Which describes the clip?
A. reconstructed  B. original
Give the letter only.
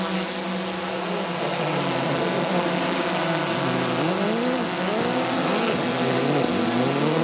B